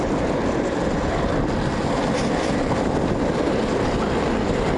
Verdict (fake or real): real